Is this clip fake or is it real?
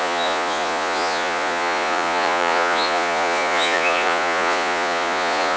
fake